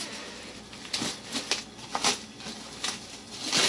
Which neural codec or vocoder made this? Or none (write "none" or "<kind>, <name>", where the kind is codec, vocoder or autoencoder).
none